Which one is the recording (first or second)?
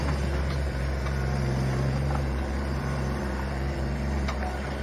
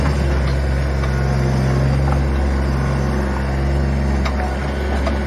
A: second